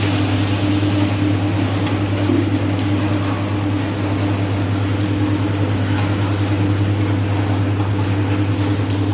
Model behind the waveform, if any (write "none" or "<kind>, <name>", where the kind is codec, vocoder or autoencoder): none